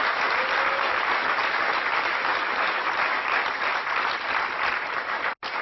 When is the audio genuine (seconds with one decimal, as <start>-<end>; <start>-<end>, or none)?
0.0-5.6